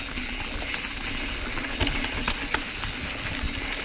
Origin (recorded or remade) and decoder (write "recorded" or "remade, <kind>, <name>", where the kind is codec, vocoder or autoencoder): recorded